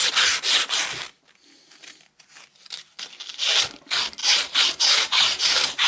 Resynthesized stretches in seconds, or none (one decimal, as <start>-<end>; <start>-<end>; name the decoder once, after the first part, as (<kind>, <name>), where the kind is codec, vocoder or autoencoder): 4.2-5.9 (vocoder, BigVGAN v2)